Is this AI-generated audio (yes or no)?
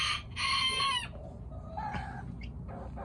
no